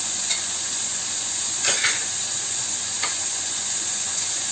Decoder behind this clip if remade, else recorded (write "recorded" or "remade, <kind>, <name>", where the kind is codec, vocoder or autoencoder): remade, vocoder, Vocos